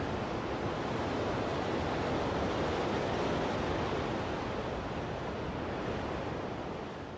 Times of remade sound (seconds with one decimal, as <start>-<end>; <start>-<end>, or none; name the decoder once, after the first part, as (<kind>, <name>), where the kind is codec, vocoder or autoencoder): none